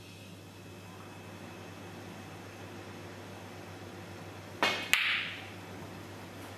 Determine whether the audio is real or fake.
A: real